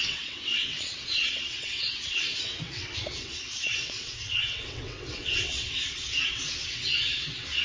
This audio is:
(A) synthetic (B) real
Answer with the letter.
A